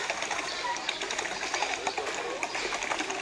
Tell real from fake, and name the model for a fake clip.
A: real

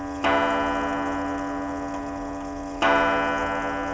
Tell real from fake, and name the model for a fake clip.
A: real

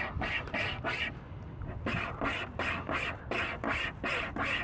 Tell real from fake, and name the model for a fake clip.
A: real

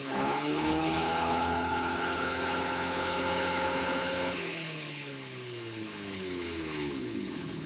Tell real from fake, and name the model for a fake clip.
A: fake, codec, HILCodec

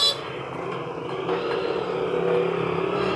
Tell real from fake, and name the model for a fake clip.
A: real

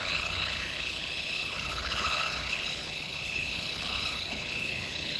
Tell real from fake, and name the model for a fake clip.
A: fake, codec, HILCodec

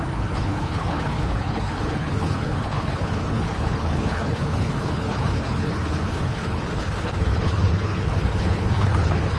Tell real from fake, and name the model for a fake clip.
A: fake, codec, HILCodec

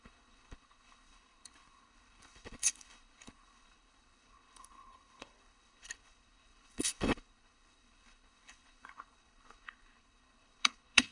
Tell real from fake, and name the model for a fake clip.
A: fake, codec, HILCodec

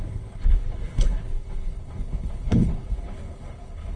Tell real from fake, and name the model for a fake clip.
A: fake, codec, HILCodec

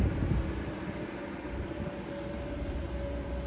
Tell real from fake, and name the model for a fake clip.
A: real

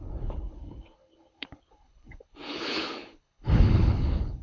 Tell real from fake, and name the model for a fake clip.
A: fake, codec, HILCodec